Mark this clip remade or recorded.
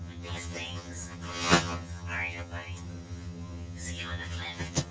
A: remade